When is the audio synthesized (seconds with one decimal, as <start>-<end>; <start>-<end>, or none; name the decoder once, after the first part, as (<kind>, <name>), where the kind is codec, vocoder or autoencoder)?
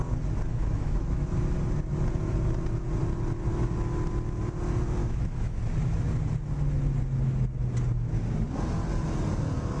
0.5-1.4 (autoencoder, DAC-VAE); 5.0-5.6